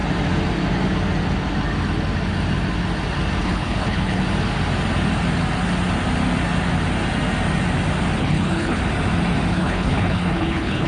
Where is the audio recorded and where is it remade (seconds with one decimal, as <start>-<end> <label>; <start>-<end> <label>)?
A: 0.0-3.4 recorded; 3.4-4.2 remade; 4.2-8.2 recorded; 8.2-8.8 remade; 8.8-9.5 recorded; 9.5-10.9 remade